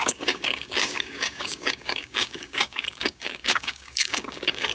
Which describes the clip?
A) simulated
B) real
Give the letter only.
A